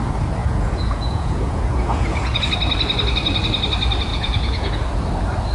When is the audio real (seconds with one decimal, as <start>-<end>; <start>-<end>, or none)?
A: 0.0-0.4; 2.4-4.1; 4.7-5.5